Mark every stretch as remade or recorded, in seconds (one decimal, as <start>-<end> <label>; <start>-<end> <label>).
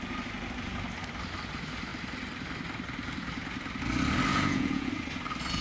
0.0-4.3 recorded; 4.3-4.9 remade; 4.9-5.6 recorded